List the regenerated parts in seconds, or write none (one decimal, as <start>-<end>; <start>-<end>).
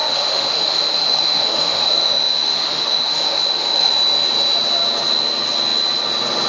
0.0-3.9